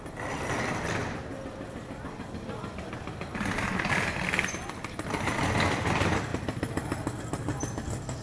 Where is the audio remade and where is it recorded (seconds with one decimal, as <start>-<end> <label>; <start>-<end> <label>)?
0.0-8.2 recorded

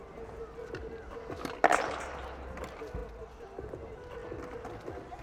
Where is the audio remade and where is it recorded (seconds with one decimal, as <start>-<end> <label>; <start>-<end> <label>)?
0.0-5.2 recorded

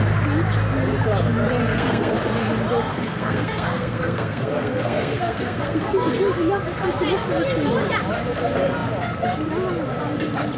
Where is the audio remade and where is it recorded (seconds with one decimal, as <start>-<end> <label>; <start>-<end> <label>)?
0.0-1.6 recorded; 1.6-2.1 remade; 2.1-2.9 recorded; 2.9-6.2 remade; 6.2-10.6 recorded